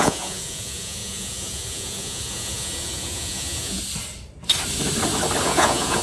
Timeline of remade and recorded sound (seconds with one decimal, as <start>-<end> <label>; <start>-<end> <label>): 0.0-3.8 remade; 3.8-5.4 recorded; 5.4-6.0 remade